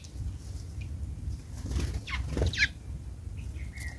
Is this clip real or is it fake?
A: real